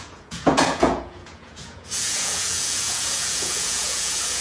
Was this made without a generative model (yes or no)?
no